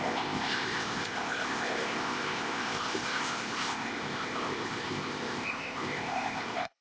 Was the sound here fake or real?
fake